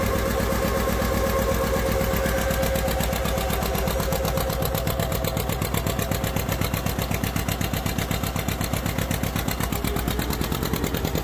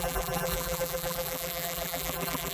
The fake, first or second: second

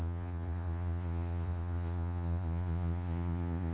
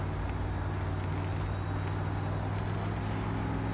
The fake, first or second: first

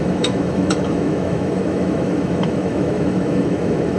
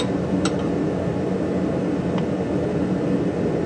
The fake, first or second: first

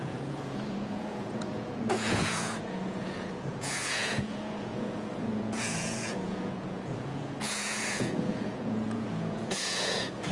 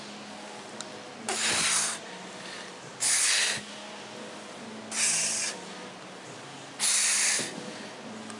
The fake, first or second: first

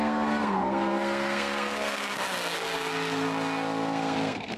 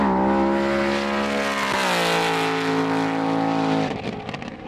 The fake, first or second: first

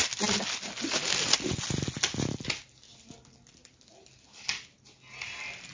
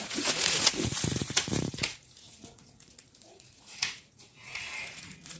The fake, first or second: second